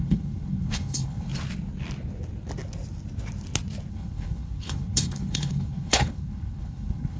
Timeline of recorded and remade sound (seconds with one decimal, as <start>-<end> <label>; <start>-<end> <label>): 0.0-1.3 remade; 1.3-3.9 recorded; 3.9-7.2 remade